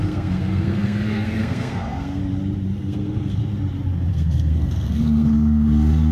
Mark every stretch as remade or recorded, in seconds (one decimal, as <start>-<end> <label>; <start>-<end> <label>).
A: 0.0-2.2 remade; 2.2-2.8 recorded; 2.8-3.4 remade; 3.4-4.1 recorded; 4.1-6.1 remade